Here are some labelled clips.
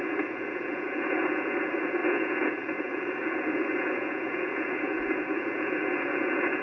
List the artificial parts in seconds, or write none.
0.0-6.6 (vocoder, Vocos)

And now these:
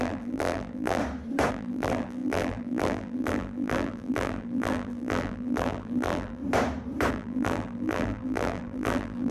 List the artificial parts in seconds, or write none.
0.0-1.0 (vocoder, BigVGAN v2); 1.5-6.4; 7.1-9.3

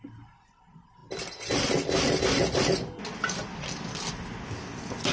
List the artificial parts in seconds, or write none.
none

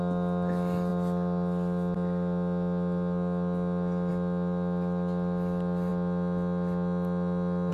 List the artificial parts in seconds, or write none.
none

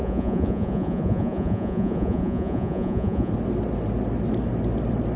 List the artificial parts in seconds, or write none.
0.0-3.3 (vocoder, Vocos)

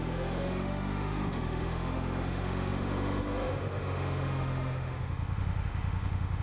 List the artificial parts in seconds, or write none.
0.0-6.4 (autoencoder, DAC-VAE)

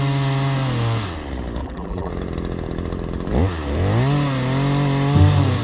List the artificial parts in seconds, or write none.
1.6-2.1 (vocoder, BigVGAN v2)

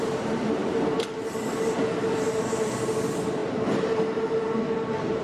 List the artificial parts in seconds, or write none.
none